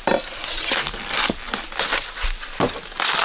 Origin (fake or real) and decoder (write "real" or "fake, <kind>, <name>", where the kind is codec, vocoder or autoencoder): real